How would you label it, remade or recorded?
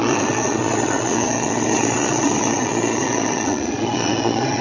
remade